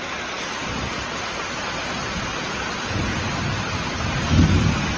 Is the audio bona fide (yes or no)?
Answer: yes